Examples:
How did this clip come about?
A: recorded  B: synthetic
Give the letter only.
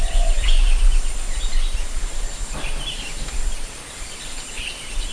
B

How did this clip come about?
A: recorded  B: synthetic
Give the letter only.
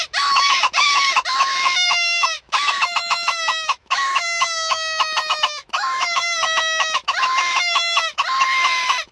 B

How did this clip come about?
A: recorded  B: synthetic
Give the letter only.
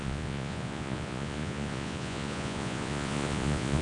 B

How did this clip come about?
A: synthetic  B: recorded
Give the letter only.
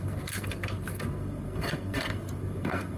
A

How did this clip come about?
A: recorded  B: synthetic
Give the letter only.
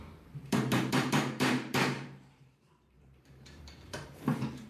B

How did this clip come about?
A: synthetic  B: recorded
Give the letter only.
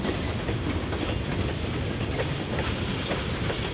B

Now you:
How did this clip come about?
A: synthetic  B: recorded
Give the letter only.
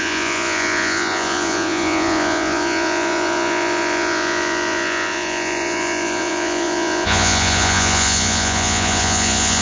A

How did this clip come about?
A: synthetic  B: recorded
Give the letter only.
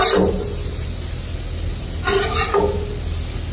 B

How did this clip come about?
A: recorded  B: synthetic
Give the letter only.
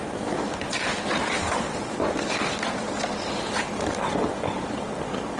A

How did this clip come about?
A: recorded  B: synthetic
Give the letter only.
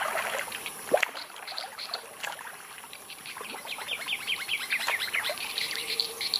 B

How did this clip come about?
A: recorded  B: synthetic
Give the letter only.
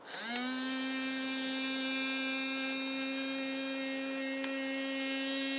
A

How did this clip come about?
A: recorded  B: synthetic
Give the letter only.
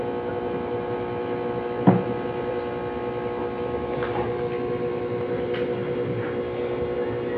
A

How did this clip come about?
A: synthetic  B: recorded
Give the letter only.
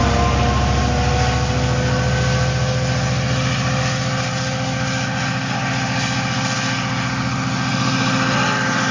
B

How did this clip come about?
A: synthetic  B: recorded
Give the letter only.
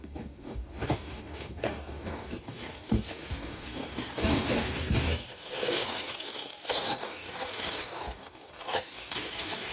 A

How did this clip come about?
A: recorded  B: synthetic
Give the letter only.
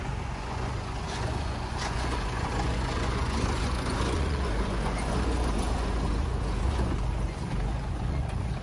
B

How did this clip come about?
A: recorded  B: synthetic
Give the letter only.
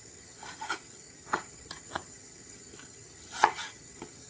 B